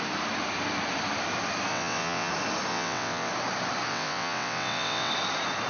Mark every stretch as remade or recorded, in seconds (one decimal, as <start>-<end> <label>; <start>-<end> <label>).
0.0-1.7 recorded; 1.7-2.3 remade; 2.3-2.7 recorded; 2.7-3.3 remade; 3.3-3.9 recorded; 3.9-5.1 remade; 5.1-5.7 recorded